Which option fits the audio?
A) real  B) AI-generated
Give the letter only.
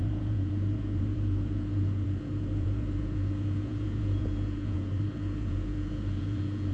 B